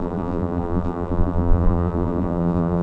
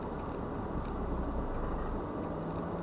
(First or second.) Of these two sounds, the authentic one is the second